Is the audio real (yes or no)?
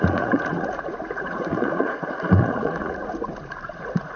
no